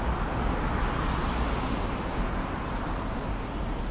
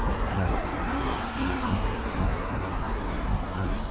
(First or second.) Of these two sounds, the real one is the first